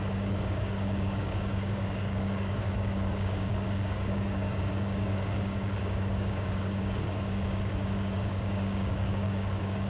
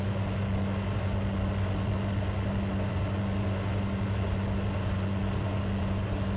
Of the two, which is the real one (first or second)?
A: second